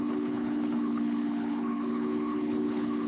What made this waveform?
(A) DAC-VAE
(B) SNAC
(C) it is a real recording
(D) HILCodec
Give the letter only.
D